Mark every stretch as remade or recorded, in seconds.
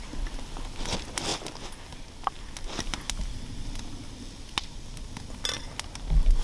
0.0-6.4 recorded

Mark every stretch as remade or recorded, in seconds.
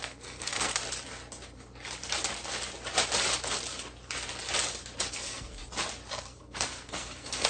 0.0-0.8 remade; 0.8-5.1 recorded; 5.1-5.6 remade; 5.6-6.1 recorded; 6.1-7.5 remade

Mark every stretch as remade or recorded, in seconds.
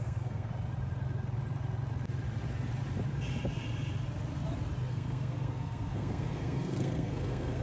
0.0-0.5 remade; 0.5-4.9 recorded; 4.9-7.6 remade